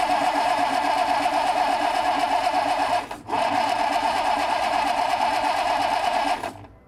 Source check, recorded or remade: remade